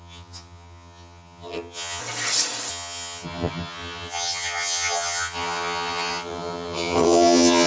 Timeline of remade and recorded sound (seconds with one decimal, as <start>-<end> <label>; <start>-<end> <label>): 0.0-2.0 remade; 2.0-2.7 recorded; 2.7-7.7 remade